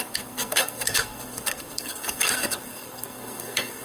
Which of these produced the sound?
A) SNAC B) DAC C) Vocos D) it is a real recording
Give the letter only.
A